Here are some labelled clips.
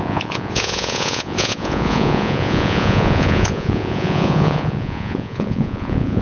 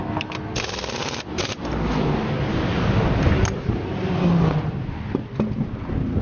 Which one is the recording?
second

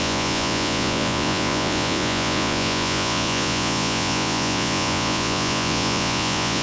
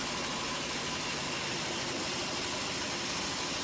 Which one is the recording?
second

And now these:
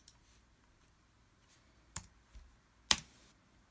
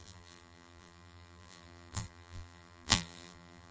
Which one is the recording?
first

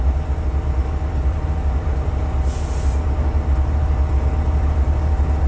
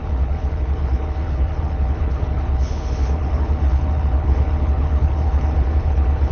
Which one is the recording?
first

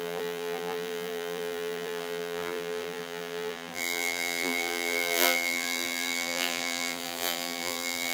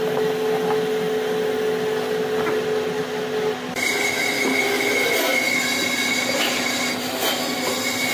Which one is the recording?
second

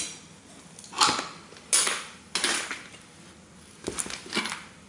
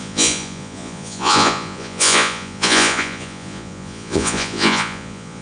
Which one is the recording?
first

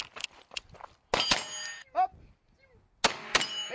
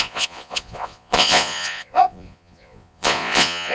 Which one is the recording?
first